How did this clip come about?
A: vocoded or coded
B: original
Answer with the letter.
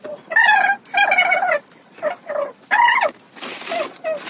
B